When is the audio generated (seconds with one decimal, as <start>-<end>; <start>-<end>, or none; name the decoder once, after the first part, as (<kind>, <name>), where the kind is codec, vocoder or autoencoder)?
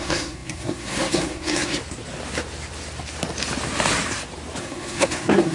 0.0-1.8 (codec, SNAC); 4.6-5.5